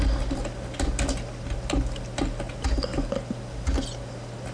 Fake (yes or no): no